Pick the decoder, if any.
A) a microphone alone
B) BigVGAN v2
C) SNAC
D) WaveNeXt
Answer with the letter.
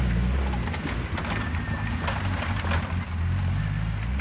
A